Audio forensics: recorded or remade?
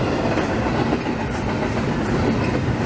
recorded